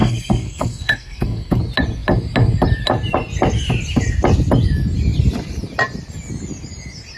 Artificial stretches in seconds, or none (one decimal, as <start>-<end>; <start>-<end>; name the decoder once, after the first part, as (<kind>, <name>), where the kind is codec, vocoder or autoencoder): 0.0-1.6 (codec, SNAC)